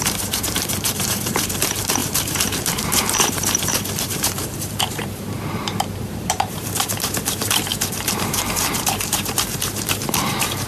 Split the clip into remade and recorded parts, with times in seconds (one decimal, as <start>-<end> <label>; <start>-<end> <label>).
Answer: 0.0-10.7 remade